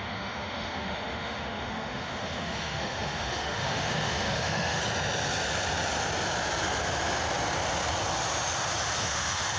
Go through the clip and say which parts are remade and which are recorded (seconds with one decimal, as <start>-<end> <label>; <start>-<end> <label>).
0.0-4.8 remade; 4.8-9.0 recorded; 9.0-9.6 remade